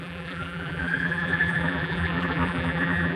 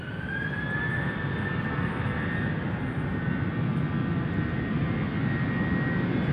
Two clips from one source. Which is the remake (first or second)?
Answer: first